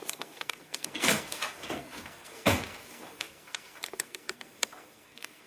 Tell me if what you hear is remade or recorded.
remade